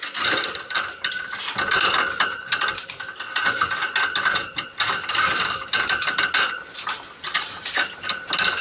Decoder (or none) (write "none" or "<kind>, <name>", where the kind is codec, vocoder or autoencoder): none